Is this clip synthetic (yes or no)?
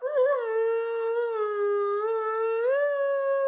no